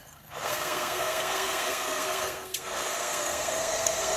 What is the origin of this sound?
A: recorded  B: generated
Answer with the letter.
B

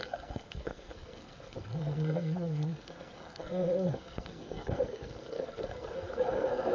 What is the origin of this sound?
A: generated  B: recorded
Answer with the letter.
A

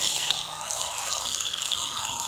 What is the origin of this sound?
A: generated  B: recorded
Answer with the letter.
A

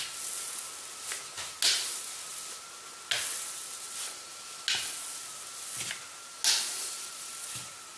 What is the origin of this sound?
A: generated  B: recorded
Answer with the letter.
B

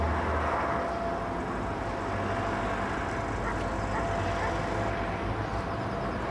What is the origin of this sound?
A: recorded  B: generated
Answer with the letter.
A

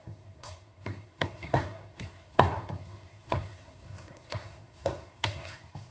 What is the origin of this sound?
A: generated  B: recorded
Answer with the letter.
A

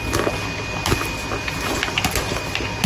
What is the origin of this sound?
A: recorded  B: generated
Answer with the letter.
A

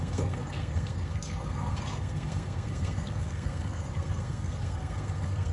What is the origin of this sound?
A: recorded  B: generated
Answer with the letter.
B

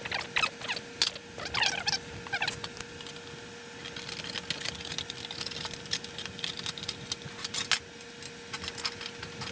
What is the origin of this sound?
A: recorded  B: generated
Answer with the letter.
A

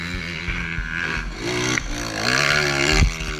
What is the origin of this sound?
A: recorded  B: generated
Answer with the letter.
A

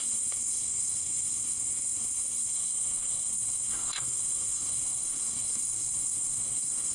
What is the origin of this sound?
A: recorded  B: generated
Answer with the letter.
B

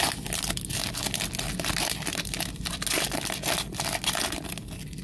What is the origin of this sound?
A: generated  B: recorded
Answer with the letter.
B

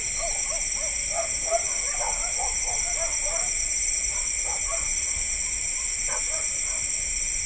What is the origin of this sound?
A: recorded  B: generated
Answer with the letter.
A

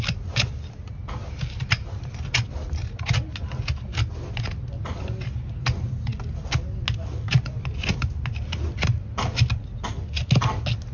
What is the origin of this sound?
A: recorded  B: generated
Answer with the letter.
A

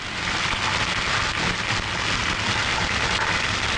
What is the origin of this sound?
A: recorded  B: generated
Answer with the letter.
A